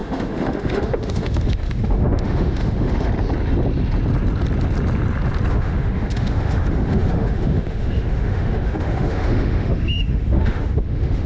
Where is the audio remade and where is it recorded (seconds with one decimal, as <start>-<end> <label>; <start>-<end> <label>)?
0.0-3.1 remade; 3.1-5.5 recorded; 5.5-11.3 remade